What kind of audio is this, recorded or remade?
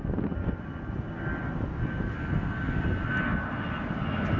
recorded